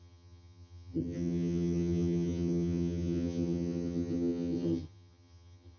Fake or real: fake